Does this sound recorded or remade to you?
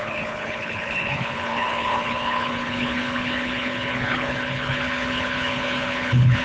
remade